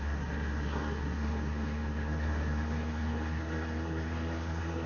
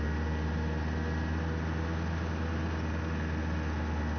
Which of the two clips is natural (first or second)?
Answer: second